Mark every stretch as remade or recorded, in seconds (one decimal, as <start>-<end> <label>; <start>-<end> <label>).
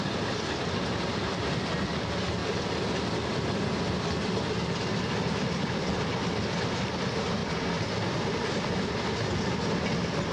0.0-10.3 recorded